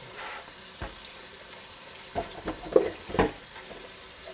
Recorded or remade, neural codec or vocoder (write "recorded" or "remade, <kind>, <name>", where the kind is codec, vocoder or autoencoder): recorded